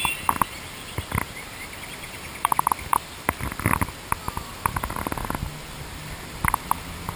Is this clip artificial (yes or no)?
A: yes